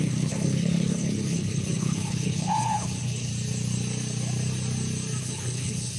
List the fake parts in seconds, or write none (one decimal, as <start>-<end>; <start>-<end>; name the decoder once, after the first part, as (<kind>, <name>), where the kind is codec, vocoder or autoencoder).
0.0-3.3 (codec, HILCodec); 5.2-6.0